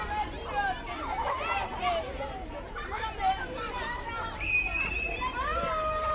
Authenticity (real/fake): fake